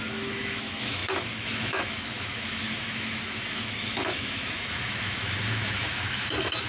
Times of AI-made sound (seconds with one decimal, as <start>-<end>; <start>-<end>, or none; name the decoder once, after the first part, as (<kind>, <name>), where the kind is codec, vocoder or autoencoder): 0.0-6.7 (autoencoder, DAC-VAE)